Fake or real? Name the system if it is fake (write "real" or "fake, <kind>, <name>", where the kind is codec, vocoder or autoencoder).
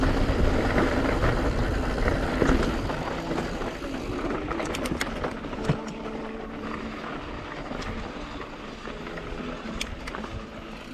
real